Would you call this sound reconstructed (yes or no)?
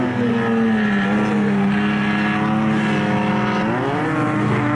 no